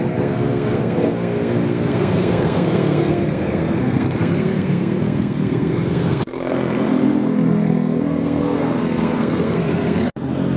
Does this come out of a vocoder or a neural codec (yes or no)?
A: yes